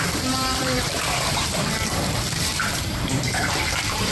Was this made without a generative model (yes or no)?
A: no